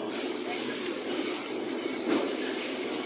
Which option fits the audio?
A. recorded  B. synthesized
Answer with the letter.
A